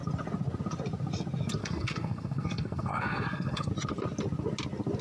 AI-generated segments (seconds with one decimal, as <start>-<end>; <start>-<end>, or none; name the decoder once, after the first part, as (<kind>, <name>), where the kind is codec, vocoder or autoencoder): 1.6-3.7 (codec, SNAC)